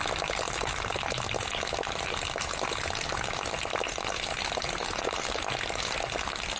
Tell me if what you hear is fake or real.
real